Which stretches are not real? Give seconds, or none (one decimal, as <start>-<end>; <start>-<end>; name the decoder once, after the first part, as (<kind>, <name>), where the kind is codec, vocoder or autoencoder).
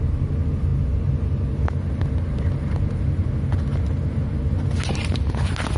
none